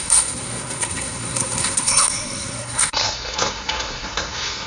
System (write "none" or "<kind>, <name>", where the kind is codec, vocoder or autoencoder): codec, SNAC